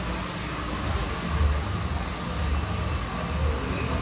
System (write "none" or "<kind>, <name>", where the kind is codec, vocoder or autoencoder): none